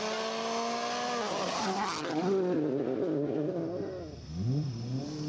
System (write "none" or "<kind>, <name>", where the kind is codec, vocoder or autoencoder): none